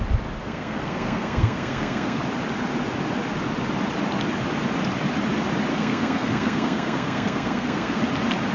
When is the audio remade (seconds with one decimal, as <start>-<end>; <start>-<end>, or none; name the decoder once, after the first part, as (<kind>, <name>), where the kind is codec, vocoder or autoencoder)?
0.4-2.2 (codec, SNAC); 5.7-8.0